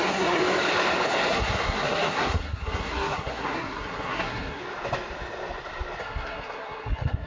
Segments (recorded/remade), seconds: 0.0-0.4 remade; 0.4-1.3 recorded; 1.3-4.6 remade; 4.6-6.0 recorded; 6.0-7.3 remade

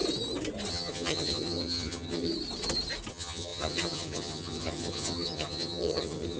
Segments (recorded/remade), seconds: 0.0-0.7 recorded; 0.7-2.3 remade; 2.3-3.1 recorded; 3.1-6.4 remade

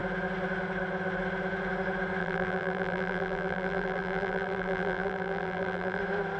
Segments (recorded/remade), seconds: 0.0-2.2 recorded; 2.2-6.0 remade; 6.0-6.4 recorded

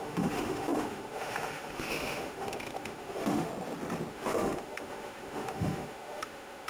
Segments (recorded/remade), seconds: 0.0-3.5 remade; 3.5-4.1 recorded; 4.1-6.7 remade

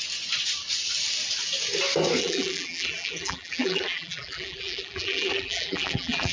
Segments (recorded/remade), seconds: 0.0-2.2 recorded; 2.2-6.3 remade

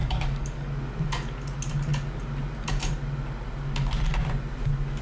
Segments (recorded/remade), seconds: 0.0-0.7 remade; 0.7-5.0 recorded